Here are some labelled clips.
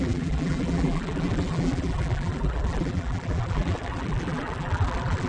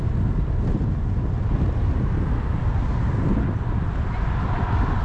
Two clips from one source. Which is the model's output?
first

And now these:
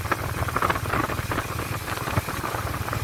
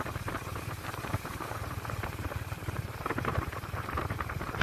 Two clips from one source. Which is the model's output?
second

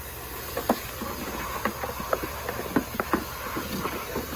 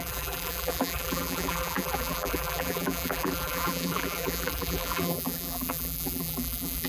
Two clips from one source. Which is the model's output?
second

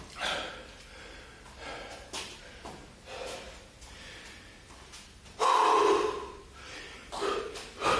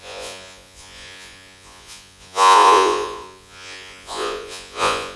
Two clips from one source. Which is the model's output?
second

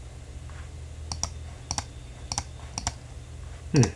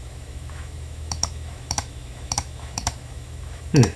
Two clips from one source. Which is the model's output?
second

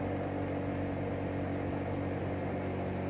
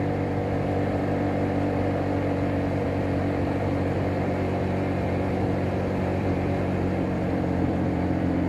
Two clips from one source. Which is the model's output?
second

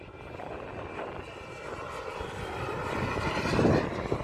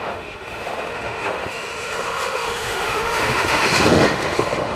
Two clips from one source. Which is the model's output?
second